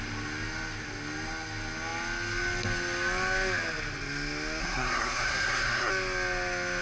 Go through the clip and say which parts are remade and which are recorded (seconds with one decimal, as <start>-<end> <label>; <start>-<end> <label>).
0.0-4.6 recorded; 4.6-5.9 remade; 5.9-6.8 recorded